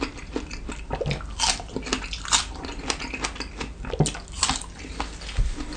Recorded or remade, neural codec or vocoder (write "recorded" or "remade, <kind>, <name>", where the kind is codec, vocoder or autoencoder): recorded